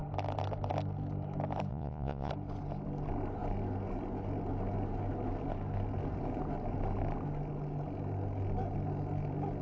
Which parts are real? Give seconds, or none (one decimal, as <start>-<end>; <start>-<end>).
0.0-1.7; 2.3-9.6